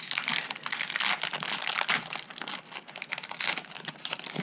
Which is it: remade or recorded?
recorded